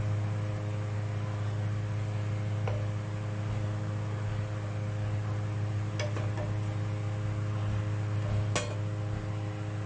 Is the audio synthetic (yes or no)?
no